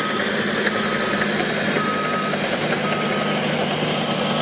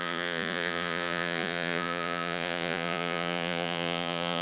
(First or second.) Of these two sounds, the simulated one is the second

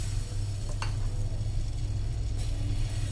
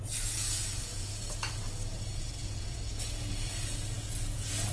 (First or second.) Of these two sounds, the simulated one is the second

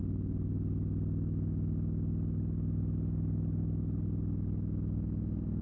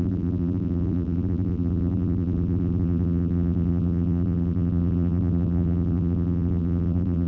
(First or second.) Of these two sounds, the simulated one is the second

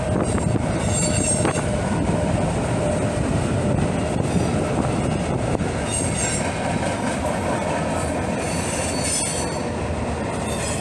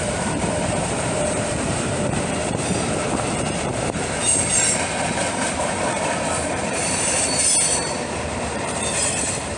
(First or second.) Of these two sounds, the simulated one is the second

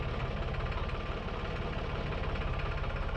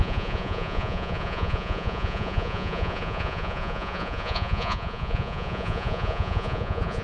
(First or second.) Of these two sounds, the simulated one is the second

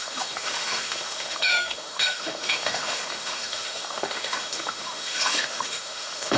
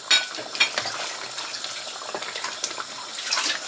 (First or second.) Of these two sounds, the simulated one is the first